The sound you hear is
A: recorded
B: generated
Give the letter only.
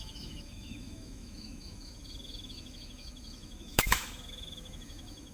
B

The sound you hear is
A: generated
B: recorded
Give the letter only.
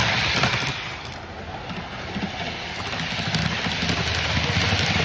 B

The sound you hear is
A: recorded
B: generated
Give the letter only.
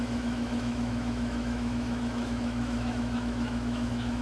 B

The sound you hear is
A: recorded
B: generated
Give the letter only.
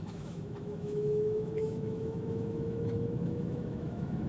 B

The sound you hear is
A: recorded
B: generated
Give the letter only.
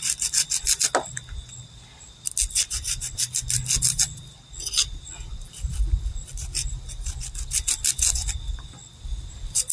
A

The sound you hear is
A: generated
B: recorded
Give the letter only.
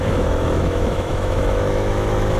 A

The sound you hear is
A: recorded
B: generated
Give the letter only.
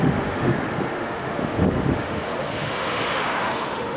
B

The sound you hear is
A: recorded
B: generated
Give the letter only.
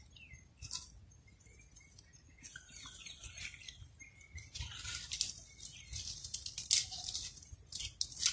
A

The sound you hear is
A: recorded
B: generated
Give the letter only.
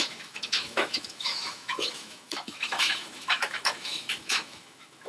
B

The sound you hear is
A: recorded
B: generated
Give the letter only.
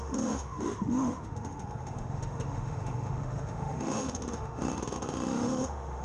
B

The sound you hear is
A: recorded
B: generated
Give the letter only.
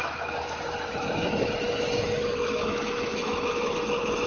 B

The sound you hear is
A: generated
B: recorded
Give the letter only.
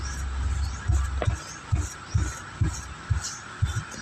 B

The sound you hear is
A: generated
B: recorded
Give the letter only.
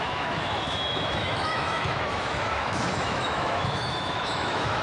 A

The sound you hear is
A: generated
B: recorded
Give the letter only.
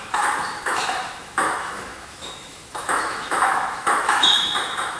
A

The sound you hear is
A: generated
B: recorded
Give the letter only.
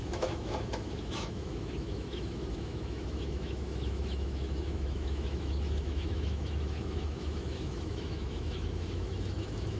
A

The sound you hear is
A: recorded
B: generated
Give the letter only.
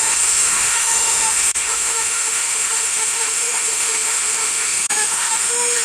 B